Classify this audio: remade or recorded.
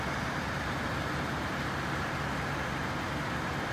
remade